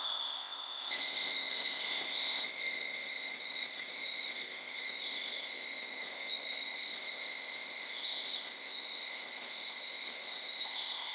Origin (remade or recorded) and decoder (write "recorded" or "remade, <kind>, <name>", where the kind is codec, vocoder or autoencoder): remade, codec, ZipCodec